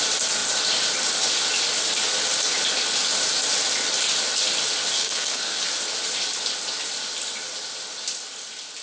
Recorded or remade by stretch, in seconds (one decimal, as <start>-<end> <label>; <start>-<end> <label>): 0.0-5.0 recorded; 5.0-5.6 remade; 5.6-8.8 recorded